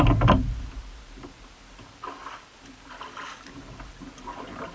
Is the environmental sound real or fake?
real